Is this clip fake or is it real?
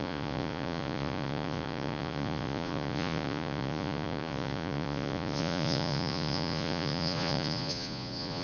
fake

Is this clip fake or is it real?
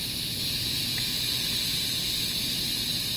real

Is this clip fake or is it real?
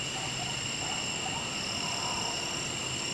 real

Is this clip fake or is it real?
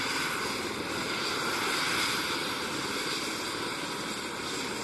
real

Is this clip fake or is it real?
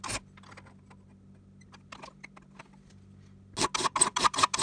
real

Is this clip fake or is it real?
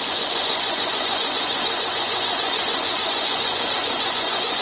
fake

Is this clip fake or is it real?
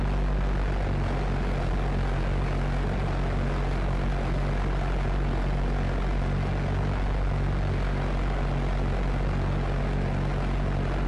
real